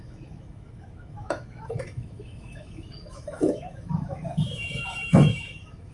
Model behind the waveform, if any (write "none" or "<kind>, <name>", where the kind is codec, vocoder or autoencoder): autoencoder, DAC-VAE